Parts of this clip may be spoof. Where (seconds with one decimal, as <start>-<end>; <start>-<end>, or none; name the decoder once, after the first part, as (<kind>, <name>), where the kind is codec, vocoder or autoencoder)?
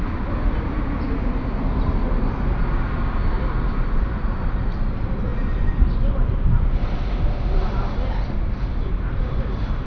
none